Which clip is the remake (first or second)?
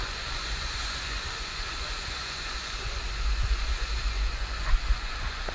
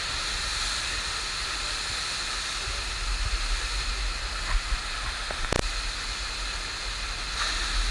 first